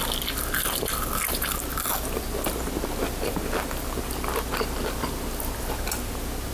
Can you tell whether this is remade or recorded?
recorded